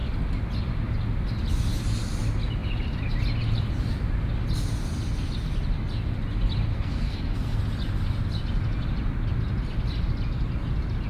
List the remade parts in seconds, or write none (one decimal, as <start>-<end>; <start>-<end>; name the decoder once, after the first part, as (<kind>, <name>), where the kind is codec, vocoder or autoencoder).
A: 6.7-7.6 (codec, SNAC)